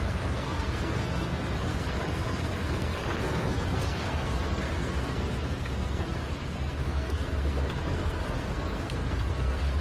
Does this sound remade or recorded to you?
remade